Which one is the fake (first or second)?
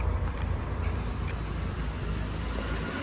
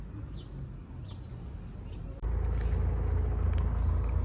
first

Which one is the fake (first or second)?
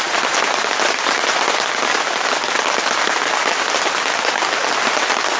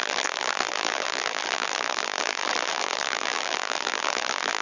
second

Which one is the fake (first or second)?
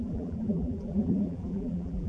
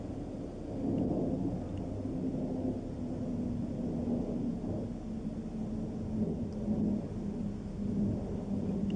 first